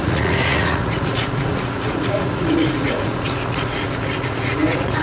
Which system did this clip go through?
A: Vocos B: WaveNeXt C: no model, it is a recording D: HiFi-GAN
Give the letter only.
A